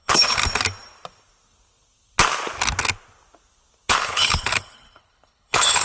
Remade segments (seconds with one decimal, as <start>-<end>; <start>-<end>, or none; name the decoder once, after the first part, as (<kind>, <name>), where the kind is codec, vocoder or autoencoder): 0.0-0.4 (codec, HILCodec); 3.9-5.8